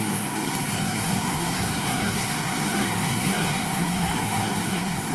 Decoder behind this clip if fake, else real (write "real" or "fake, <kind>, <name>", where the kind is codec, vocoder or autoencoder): fake, codec, SNAC